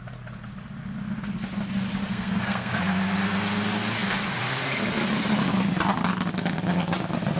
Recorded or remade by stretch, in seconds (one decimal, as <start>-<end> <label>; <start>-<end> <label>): 0.0-2.1 recorded; 2.1-2.8 remade; 2.8-7.4 recorded